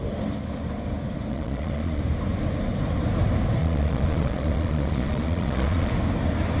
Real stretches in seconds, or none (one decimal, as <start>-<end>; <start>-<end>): 0.0-1.3; 2.0-3.6; 5.9-6.6